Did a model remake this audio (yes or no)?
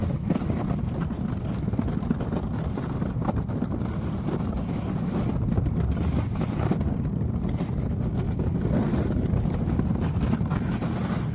no